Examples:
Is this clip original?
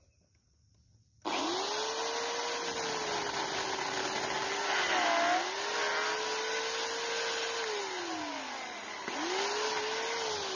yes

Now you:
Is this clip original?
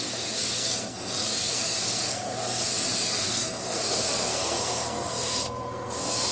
no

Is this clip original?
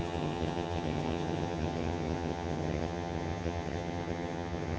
no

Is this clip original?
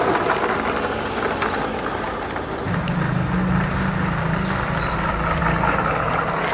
yes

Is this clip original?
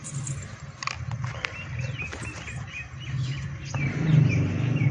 yes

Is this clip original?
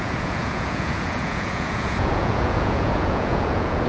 no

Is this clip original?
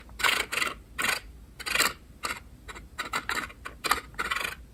yes